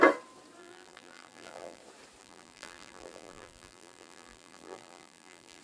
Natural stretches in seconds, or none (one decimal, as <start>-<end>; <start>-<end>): 0.0-0.6; 1.8-2.2